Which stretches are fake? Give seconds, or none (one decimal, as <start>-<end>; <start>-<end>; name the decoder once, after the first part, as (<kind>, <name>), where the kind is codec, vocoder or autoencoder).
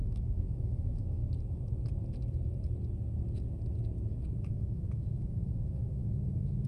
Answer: 0.0-1.2 (autoencoder, DAC-VAE); 4.4-6.7